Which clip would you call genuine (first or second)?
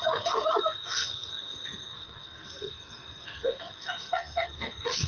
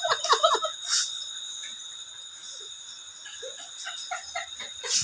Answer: second